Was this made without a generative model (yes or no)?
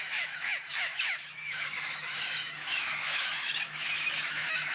no